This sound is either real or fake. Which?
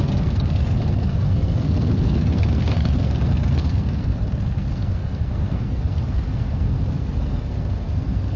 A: fake